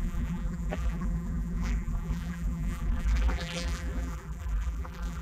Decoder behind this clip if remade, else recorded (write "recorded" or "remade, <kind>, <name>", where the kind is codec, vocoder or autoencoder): remade, vocoder, BigVGAN v2